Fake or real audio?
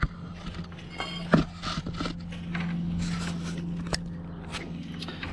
real